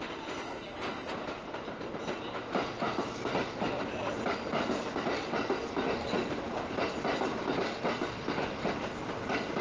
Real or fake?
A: real